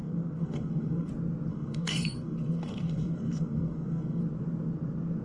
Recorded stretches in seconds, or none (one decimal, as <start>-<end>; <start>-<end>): 1.1-1.5; 4.2-5.2